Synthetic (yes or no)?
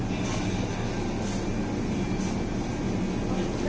no